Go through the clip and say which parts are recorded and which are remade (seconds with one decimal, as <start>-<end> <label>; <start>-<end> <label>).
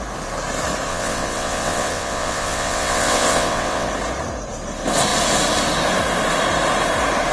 0.0-0.9 recorded; 0.9-3.9 remade; 3.9-7.3 recorded